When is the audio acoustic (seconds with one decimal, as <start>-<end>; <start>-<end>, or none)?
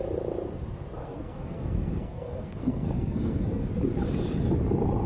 0.0-1.0; 3.7-5.1